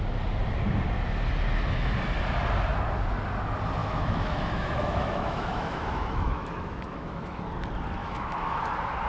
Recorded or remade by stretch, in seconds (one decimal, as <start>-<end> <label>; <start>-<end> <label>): 0.0-3.8 recorded; 3.8-7.4 remade; 7.4-8.0 recorded; 8.0-8.6 remade; 8.6-9.1 recorded